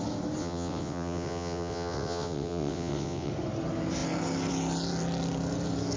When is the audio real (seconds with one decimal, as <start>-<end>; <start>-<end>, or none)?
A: 0.0-0.4; 3.3-6.0

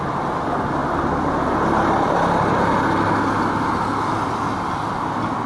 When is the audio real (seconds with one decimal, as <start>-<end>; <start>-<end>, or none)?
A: 0.0-5.5

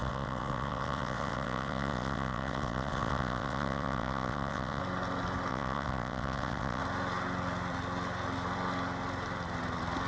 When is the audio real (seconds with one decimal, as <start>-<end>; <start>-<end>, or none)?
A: 4.8-5.5; 6.8-10.1

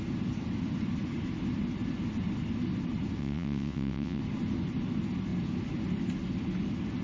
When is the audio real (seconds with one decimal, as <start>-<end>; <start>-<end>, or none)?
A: 0.0-3.2; 4.2-7.0

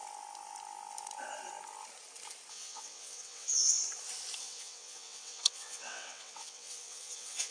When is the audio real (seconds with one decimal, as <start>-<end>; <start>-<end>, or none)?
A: 0.0-2.5; 3.8-4.4

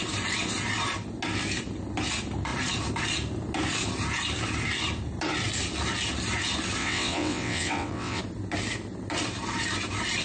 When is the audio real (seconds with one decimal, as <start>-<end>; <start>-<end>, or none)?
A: 0.0-6.8; 8.2-10.2

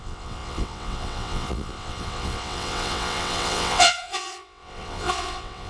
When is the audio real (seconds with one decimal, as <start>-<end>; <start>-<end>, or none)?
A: none

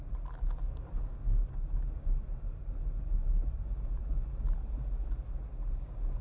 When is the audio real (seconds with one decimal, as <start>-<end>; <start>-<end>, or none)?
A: 0.0-6.2